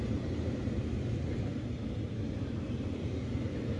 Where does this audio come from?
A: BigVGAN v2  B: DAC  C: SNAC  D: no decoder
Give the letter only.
D